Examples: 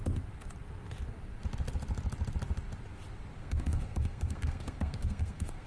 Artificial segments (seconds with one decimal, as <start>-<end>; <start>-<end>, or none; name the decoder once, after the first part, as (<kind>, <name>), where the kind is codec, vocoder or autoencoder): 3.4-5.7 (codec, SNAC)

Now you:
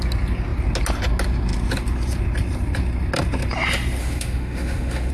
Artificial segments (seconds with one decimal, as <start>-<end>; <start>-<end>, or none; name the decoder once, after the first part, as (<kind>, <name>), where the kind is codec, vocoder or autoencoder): 4.0-5.1 (autoencoder, DAC-VAE)

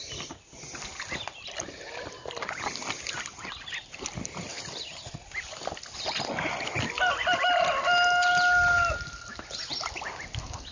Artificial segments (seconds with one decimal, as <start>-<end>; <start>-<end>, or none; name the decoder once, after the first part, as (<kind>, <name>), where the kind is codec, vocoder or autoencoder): none